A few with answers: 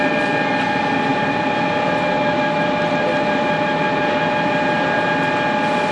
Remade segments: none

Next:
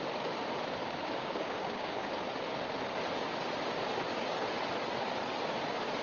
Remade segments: 0.8-2.1 (codec, DAC)

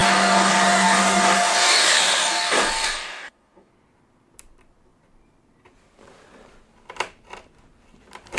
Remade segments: 0.0-3.7 (codec, DAC)

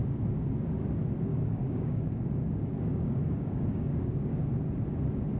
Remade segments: 0.0-0.8 (codec, DAC); 1.3-4.5

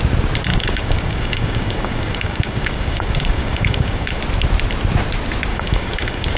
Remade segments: 0.5-4.2 (codec, DAC); 5.5-6.4

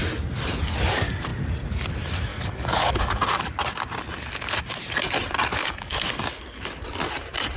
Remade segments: 2.3-3.2 (codec, DAC); 5.5-6.0

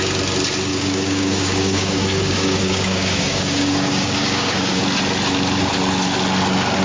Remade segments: 0.7-4.8 (codec, DAC)